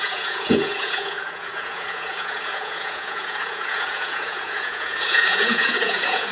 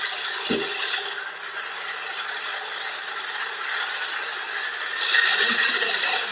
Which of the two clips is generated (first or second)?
first